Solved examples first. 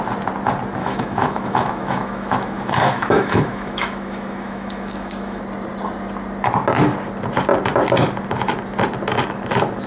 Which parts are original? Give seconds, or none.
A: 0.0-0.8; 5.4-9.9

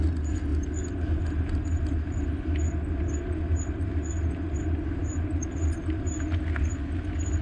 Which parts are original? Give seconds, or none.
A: 0.0-7.4

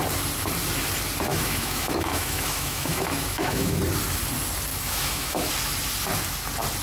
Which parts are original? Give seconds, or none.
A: 0.0-1.3; 3.8-4.7; 5.5-6.8

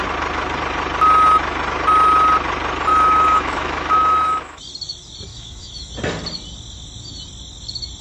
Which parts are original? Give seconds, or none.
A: 0.0-2.9; 4.6-5.3; 5.9-8.0

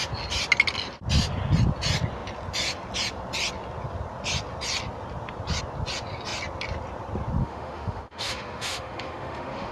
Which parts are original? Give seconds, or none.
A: 0.0-7.4

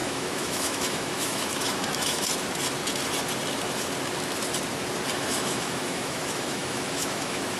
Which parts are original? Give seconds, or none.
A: 2.3-5.1

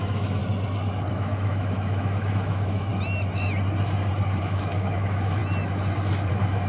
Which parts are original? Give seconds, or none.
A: 0.4-1.1; 2.9-4.4; 5.4-6.3